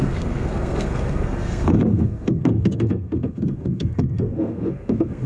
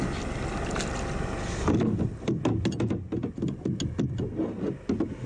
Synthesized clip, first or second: first